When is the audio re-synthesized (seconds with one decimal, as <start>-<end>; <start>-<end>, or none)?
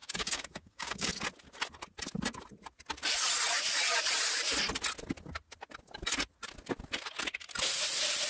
0.0-1.1